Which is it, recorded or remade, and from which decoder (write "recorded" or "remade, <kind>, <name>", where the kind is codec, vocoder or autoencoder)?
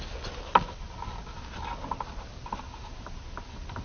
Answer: recorded